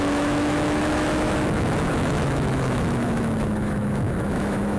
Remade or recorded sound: remade